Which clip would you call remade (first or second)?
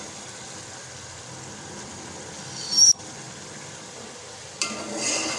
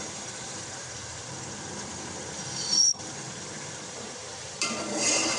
second